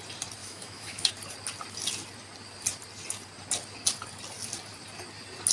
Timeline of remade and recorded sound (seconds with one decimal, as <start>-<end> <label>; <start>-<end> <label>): 0.0-0.4 recorded; 0.4-1.1 remade; 1.1-5.5 recorded